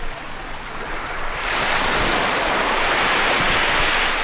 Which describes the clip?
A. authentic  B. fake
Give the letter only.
A